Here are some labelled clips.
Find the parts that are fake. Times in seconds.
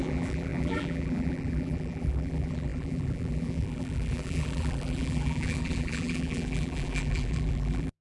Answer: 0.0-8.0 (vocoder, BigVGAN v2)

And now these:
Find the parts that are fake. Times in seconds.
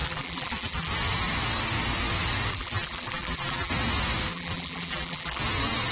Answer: 0.0-0.9 (vocoder, BigVGAN v2); 2.5-3.7; 4.3-5.4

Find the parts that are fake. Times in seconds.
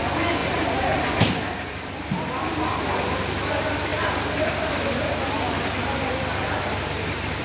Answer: 0.4-1.2 (vocoder, BigVGAN v2)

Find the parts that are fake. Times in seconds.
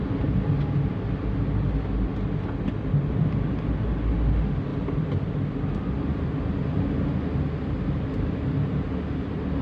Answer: none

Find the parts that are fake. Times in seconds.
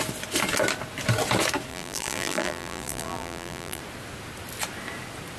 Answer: 1.7-3.8 (vocoder, BigVGAN v2)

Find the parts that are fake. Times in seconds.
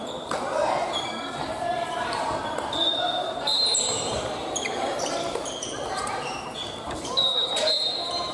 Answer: 0.0-8.3 (vocoder, BigVGAN v2)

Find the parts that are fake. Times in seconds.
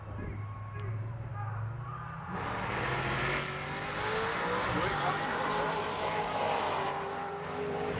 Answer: 0.0-1.3 (vocoder, BigVGAN v2); 5.0-8.0